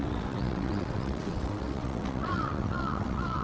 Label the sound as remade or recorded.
remade